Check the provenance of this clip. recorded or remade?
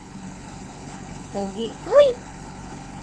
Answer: remade